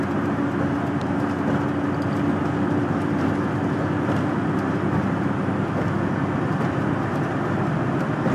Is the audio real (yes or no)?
yes